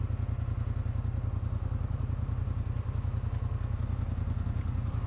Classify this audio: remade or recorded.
recorded